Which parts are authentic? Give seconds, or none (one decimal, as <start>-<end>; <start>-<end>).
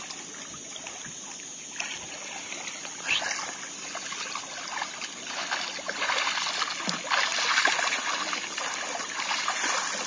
0.0-10.1